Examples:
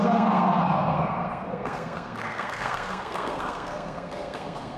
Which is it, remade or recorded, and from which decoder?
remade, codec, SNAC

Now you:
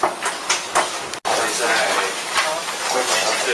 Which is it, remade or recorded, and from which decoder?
recorded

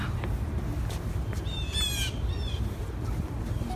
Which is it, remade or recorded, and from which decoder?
recorded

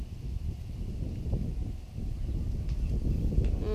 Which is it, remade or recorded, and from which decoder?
recorded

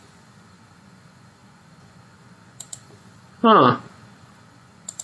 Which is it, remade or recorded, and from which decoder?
remade, vocoder, Vocos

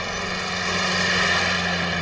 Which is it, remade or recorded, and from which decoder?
recorded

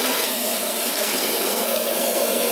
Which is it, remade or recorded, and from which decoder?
remade, codec, SNAC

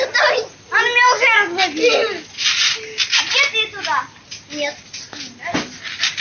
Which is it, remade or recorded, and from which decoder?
recorded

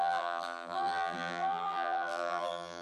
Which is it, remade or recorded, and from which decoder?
remade, vocoder, BigVGAN v2